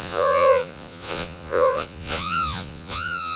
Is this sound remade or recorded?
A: remade